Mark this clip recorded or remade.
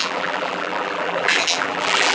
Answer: remade